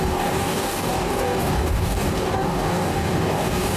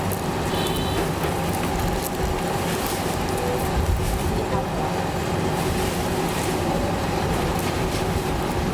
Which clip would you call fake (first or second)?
first